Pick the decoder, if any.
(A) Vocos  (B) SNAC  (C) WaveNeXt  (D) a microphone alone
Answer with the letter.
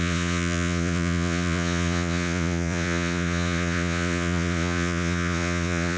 A